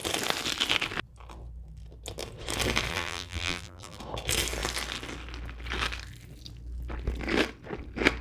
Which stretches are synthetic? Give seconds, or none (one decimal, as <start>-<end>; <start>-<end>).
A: 2.9-4.0